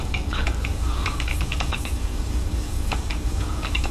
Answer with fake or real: fake